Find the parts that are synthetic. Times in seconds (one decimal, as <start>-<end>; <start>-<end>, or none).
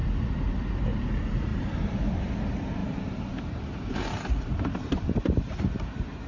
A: 2.8-4.8